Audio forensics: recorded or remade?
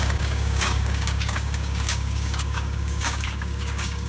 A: remade